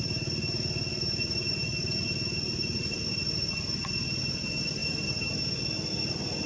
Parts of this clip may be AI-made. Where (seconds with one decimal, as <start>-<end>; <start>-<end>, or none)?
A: 4.8-5.3